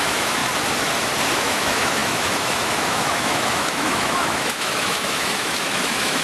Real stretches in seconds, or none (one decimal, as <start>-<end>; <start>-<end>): 0.4-1.4